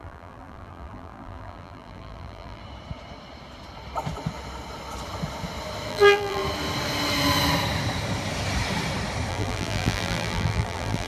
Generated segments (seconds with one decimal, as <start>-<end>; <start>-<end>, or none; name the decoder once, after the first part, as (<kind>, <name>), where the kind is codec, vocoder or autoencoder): 0.0-2.6 (vocoder, BigVGAN v2); 5.9-6.4; 9.3-11.1